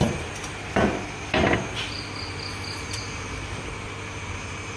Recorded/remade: recorded